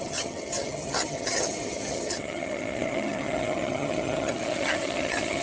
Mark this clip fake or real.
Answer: fake